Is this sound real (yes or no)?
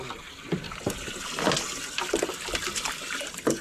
yes